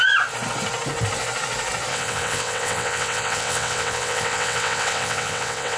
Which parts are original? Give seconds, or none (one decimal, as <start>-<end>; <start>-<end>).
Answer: 0.0-1.9